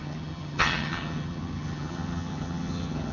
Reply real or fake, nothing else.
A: fake